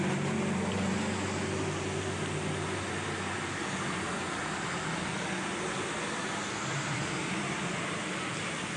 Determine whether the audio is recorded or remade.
recorded